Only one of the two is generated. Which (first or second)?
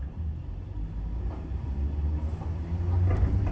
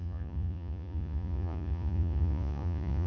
second